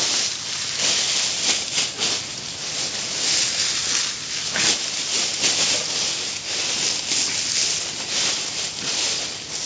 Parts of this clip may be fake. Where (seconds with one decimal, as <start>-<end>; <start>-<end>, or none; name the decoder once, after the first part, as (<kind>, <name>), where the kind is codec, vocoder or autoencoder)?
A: none